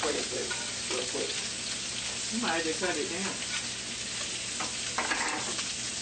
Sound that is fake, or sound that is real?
real